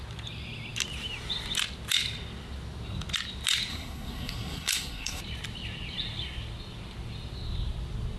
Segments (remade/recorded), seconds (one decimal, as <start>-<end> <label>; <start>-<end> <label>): 0.0-3.7 recorded; 3.7-5.2 remade; 5.2-8.2 recorded